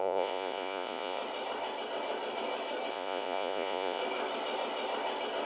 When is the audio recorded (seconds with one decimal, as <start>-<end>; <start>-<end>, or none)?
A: 1.2-2.9; 4.0-5.5